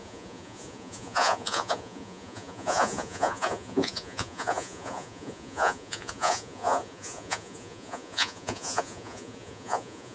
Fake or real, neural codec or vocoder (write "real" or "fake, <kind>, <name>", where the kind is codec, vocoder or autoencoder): fake, vocoder, Vocos